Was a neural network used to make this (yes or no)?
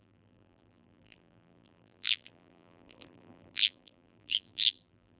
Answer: yes